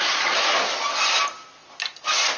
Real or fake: real